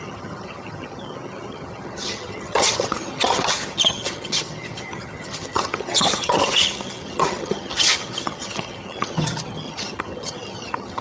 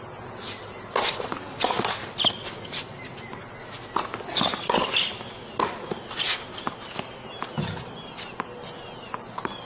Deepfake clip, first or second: first